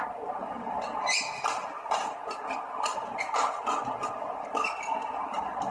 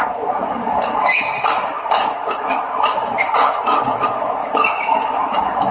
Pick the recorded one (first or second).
first